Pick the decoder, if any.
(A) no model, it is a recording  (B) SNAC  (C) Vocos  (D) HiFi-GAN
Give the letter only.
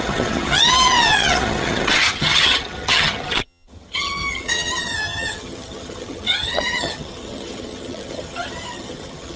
D